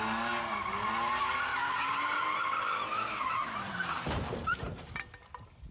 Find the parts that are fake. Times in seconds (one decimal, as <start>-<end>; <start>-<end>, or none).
1.5-4.9